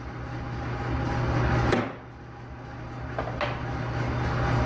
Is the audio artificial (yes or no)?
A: no